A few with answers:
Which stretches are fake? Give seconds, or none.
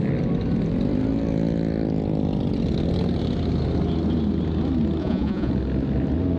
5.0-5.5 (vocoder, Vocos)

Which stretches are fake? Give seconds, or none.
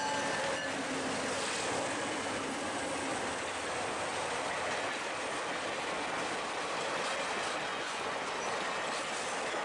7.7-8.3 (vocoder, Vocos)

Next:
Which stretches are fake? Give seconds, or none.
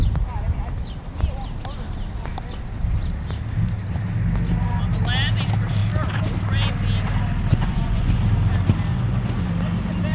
7.5-8.2 (vocoder, Vocos); 8.9-9.5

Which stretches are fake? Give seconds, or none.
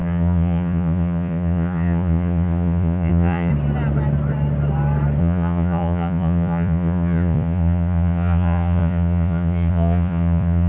0.0-3.5 (vocoder, Vocos); 5.2-10.7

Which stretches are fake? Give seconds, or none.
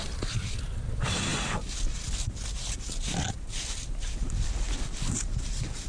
none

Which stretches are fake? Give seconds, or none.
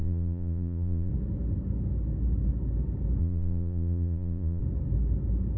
0.0-1.1 (vocoder, Vocos); 3.2-4.6